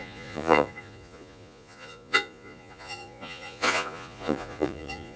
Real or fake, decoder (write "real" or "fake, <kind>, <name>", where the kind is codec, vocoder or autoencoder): fake, vocoder, Vocos